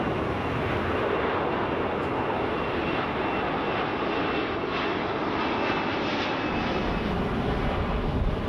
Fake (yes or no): no